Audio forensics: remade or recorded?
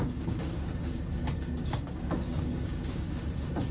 remade